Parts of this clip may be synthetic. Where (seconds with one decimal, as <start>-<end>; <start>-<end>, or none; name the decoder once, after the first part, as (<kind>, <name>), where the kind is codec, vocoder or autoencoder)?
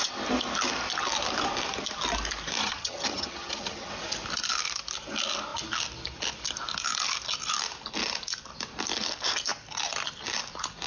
2.6-3.9 (vocoder, HiFi-GAN)